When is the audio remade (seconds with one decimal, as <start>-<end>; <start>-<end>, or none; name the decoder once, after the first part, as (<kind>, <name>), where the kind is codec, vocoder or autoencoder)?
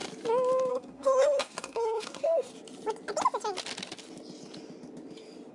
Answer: 0.7-2.5 (codec, SNAC)